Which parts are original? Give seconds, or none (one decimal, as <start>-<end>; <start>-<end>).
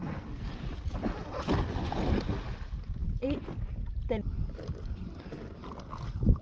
0.6-6.4